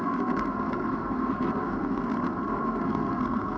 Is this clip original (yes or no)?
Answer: no